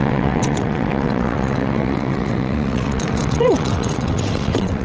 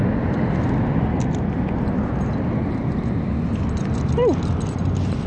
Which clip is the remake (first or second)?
first